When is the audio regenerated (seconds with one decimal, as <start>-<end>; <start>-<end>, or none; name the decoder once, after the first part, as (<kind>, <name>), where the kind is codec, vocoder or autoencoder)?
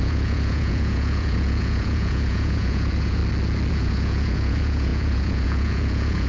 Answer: 0.0-3.2 (vocoder, Vocos); 3.7-6.3